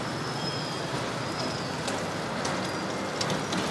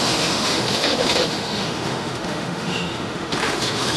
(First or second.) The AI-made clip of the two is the second